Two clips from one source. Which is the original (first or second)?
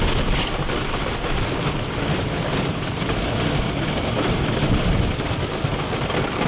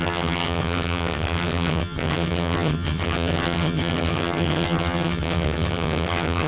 first